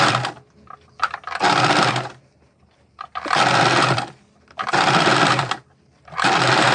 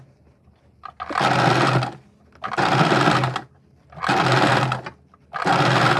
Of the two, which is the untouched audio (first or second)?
second